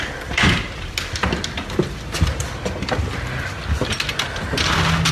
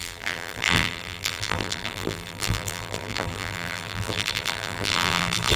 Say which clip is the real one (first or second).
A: first